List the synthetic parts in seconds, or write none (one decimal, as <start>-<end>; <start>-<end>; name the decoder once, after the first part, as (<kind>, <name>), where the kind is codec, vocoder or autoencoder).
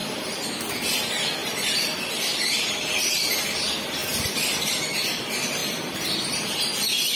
0.0-0.5 (vocoder, BigVGAN v2); 1.4-3.1; 5.6-6.7